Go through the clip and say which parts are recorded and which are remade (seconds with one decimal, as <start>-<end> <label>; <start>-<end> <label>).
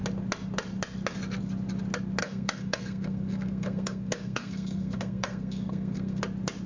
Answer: 0.0-2.2 recorded; 2.2-6.2 remade; 6.2-6.7 recorded